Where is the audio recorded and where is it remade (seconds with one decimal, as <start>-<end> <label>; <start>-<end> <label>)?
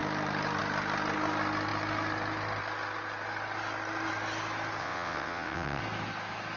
0.0-4.8 recorded; 4.8-5.8 remade; 5.8-6.6 recorded